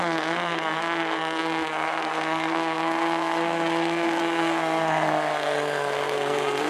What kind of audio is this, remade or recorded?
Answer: remade